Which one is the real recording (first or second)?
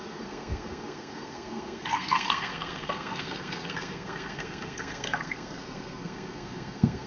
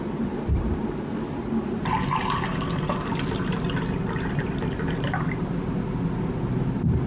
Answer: second